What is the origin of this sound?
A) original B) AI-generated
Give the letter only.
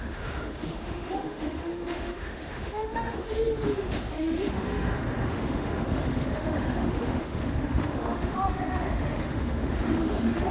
B